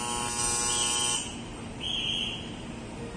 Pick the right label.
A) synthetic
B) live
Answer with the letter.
B